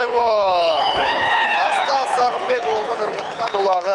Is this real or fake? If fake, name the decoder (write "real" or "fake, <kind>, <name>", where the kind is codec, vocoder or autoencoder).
fake, codec, HILCodec